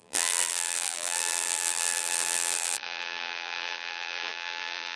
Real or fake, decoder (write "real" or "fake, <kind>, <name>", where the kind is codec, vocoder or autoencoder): fake, vocoder, BigVGAN v2